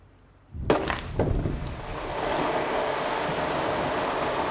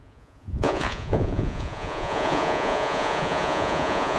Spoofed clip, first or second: second